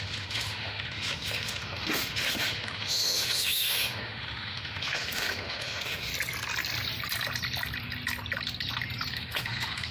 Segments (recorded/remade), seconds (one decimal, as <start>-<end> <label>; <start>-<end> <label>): 0.0-6.1 remade; 6.1-9.1 recorded; 9.1-9.9 remade